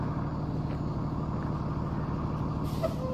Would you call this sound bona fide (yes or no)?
yes